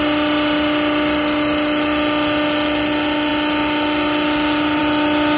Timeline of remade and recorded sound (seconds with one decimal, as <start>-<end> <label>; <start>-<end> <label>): 0.0-5.4 recorded